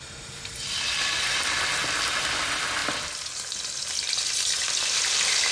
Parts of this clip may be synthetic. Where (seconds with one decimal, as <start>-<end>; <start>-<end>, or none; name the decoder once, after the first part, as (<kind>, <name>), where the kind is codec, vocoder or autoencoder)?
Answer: none